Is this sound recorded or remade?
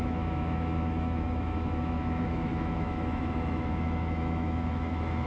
remade